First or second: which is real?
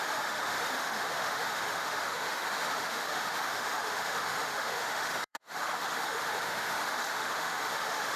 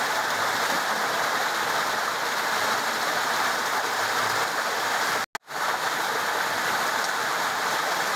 second